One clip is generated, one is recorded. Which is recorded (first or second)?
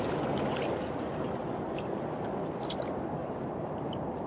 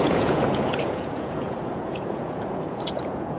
first